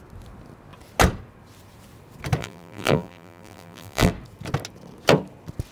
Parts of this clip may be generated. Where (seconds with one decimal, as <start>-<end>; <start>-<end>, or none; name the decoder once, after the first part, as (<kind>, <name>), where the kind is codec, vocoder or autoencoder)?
2.4-4.1 (vocoder, BigVGAN v2)